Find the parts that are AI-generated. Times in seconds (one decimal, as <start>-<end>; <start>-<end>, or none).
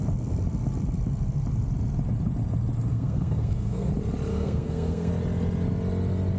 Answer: 2.9-3.9; 4.3-5.1